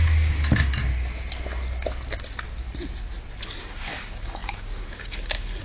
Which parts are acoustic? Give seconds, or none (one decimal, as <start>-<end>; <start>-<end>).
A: 0.9-3.6